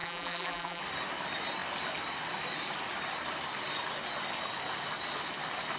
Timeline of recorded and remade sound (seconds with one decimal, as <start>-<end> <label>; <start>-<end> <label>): 0.0-0.8 remade; 0.8-5.8 recorded